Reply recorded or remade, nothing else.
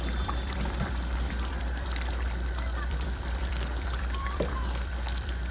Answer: remade